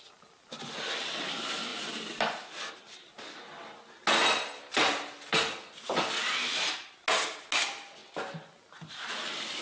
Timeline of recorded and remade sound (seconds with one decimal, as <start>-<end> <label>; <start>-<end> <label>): 0.0-9.6 recorded